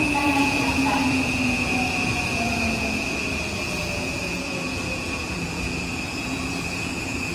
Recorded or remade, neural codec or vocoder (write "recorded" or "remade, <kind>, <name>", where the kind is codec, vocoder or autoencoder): remade, vocoder, Vocos